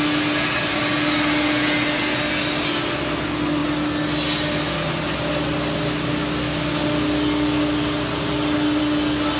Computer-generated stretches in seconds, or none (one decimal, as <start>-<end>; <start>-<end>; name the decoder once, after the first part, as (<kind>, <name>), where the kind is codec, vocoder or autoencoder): none